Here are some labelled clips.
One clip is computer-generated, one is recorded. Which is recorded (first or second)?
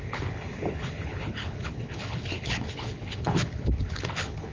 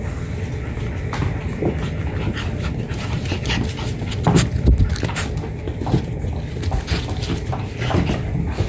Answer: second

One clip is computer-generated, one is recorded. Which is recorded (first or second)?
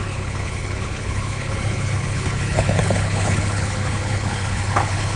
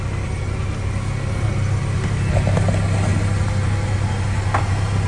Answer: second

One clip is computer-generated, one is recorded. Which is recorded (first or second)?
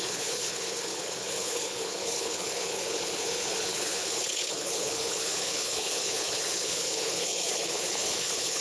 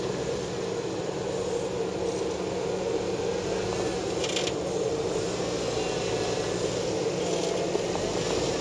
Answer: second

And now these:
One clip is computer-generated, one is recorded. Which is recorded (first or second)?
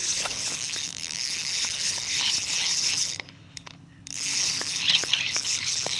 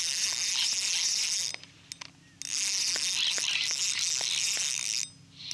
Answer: second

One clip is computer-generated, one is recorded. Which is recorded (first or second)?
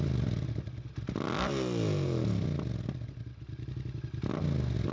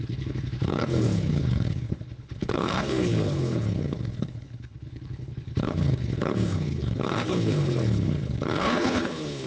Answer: first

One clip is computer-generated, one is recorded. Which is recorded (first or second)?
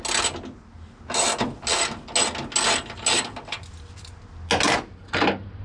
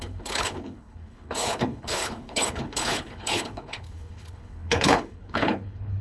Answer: first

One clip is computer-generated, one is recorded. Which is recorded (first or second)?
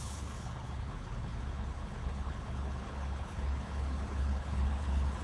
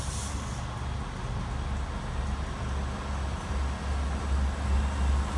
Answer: second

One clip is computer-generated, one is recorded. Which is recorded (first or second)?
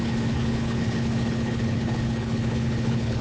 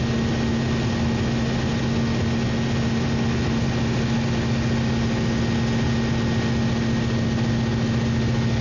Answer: second